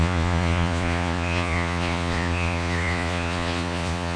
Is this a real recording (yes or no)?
no